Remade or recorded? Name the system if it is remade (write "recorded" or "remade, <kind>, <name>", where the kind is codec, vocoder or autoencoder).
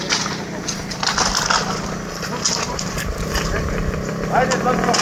recorded